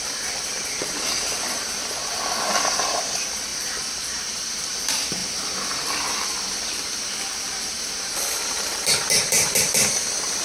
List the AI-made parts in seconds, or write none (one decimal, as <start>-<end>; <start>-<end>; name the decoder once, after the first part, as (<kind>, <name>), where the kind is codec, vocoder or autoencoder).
0.0-2.0 (vocoder, BigVGAN v2); 3.0-10.4